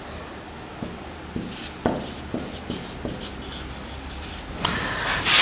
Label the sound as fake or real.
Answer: real